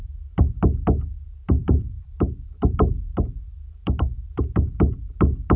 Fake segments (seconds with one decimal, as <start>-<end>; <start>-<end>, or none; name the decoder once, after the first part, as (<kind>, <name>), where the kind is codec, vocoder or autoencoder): 1.6-5.0 (vocoder, BigVGAN v2)